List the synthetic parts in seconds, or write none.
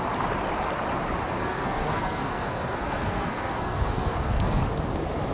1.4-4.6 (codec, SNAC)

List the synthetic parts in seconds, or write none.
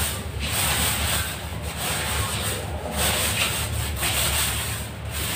none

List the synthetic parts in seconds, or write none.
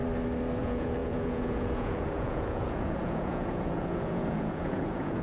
0.6-5.2 (vocoder, Vocos)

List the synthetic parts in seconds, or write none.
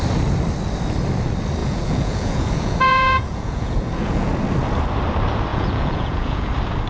1.6-4.3 (vocoder, Vocos); 5.5-6.5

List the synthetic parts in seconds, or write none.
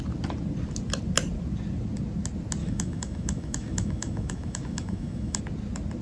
2.6-5.4 (autoencoder, DAC-VAE)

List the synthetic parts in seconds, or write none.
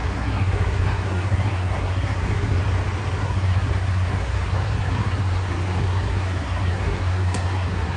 0.0-2.6 (codec, SNAC); 3.2-8.0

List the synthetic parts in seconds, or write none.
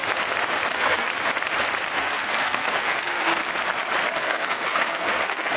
0.7-1.1 (codec, SNAC); 2.0-3.3; 4.2-5.6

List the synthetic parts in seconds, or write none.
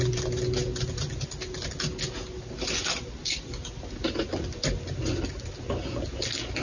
none